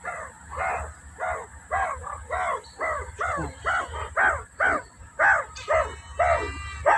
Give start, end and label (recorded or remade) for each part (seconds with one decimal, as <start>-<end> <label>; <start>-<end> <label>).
0.0-7.0 recorded